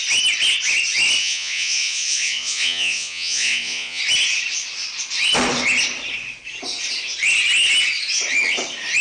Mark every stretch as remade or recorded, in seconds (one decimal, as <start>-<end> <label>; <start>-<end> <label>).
0.0-1.2 recorded; 1.2-4.0 remade; 4.0-9.0 recorded